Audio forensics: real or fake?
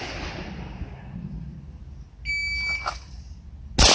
real